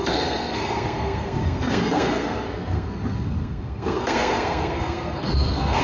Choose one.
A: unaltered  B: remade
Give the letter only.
B